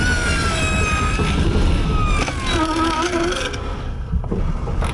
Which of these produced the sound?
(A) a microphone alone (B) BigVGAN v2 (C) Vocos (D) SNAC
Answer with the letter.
A